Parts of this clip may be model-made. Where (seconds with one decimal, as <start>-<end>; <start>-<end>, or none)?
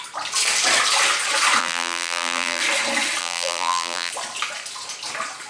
1.6-2.6; 3.2-4.1